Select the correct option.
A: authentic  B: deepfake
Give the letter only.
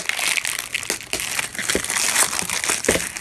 A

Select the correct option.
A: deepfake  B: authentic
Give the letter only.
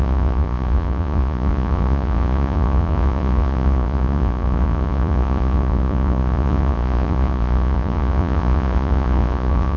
A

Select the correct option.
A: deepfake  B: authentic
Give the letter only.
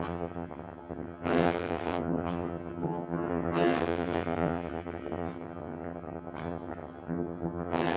A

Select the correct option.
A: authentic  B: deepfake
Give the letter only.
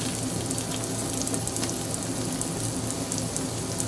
A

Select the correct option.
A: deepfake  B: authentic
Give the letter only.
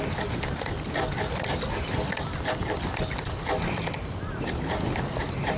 B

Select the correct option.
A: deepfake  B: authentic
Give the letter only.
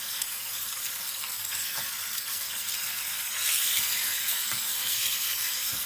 A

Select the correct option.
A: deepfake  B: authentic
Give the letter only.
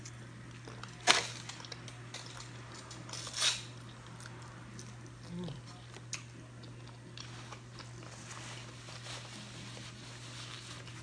B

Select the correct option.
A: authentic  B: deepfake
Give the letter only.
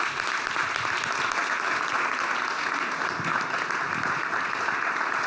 A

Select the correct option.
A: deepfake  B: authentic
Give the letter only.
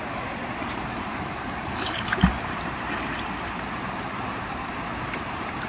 A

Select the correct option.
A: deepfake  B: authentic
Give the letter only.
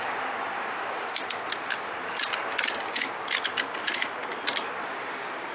B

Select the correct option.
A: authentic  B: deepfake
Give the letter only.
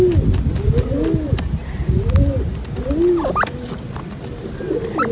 A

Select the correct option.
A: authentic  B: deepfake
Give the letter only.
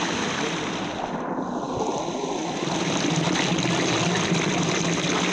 A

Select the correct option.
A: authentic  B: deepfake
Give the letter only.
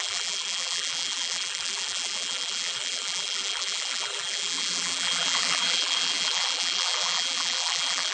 B